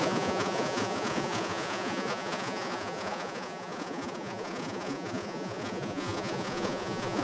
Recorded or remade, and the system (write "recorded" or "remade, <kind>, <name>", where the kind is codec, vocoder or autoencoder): remade, vocoder, Vocos